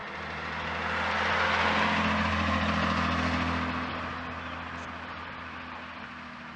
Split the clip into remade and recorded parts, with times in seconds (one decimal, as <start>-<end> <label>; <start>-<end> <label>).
0.0-6.6 recorded